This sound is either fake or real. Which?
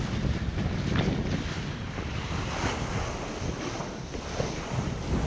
real